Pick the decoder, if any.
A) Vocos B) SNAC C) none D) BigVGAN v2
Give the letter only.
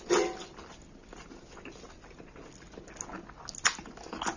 C